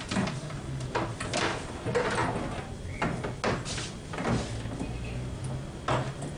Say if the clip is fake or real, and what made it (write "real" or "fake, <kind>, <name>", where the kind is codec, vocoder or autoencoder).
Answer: real